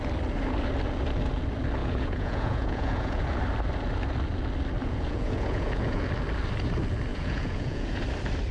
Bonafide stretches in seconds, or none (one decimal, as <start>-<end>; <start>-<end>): 0.0-1.8; 3.2-4.8; 6.1-7.1; 8.0-8.5